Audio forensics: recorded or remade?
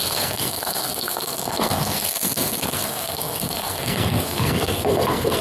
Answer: remade